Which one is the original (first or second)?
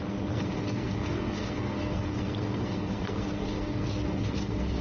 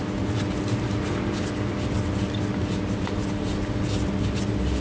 second